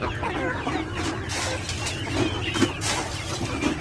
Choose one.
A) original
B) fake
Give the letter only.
A